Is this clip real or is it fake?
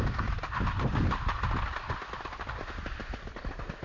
real